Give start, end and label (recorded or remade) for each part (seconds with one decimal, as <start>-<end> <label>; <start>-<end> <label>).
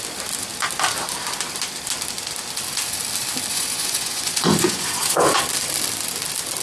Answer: 0.0-3.5 recorded; 3.5-5.4 remade; 5.4-6.6 recorded